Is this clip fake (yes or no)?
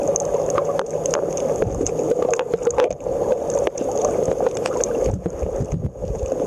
no